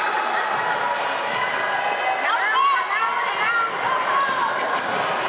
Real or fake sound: real